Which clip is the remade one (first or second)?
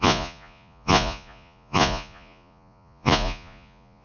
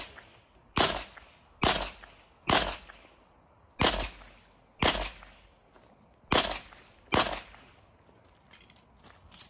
first